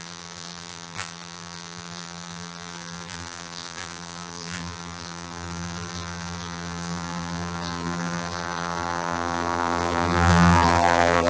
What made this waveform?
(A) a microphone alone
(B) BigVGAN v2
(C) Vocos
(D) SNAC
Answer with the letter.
B